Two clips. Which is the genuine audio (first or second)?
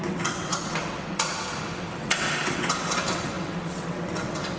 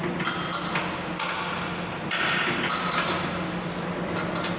second